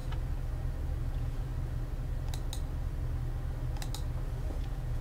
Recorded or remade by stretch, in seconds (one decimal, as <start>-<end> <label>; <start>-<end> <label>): 0.0-1.1 recorded; 1.1-1.5 remade; 1.5-4.5 recorded; 4.5-5.0 remade